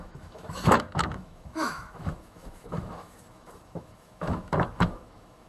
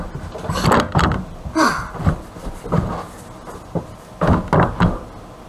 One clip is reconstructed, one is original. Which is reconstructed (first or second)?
first